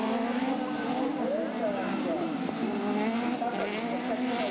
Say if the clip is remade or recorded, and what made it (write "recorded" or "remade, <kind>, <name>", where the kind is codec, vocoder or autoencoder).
recorded